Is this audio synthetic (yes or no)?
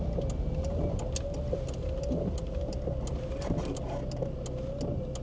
no